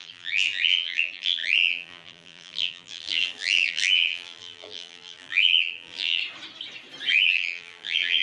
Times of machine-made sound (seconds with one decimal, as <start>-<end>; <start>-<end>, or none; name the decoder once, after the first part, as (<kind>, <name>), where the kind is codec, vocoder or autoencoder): 0.0-6.2 (vocoder, BigVGAN v2); 7.1-8.2